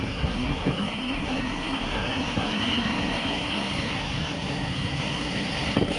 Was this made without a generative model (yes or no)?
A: no